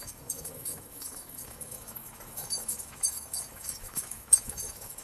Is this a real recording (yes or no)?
no